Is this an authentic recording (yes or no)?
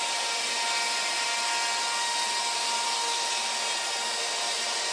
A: yes